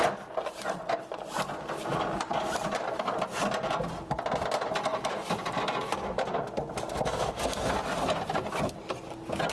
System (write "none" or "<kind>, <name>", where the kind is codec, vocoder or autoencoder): none